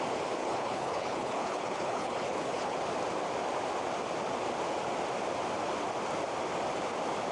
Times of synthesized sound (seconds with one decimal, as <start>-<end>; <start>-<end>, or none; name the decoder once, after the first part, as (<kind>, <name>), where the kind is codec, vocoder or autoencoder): 0.4-2.8 (codec, HILCodec)